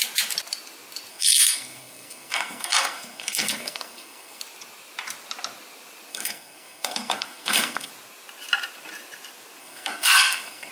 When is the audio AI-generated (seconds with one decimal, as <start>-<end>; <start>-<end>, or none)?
1.1-4.4; 6.1-7.9; 9.6-10.7